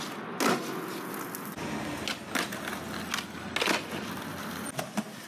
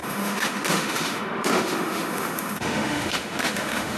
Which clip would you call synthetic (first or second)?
second